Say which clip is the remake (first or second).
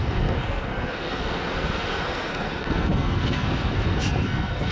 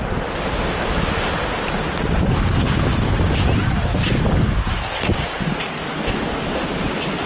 first